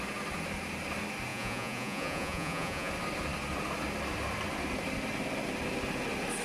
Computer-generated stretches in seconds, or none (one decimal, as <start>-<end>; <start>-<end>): 1.3-2.9